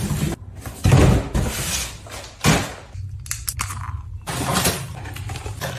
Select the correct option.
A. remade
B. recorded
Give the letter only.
B